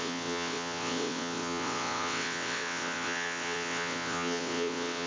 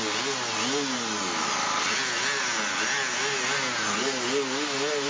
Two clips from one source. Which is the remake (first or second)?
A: first